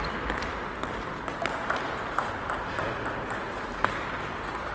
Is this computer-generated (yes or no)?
no